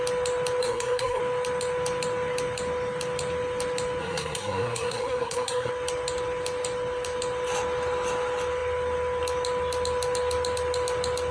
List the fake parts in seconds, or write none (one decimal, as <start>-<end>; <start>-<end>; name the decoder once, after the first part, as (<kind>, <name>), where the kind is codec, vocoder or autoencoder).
0.6-1.2 (codec, SNAC); 4.0-5.7